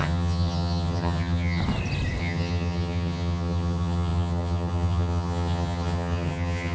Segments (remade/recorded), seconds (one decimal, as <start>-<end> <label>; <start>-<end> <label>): 0.0-1.6 remade; 1.6-2.2 recorded; 2.2-6.7 remade